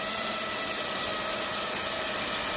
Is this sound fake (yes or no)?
no